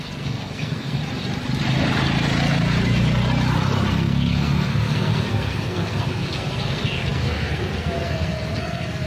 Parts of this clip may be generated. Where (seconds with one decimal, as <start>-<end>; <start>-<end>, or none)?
0.0-1.0; 3.9-9.1